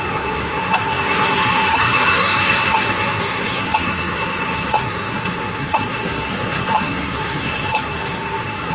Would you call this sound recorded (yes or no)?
no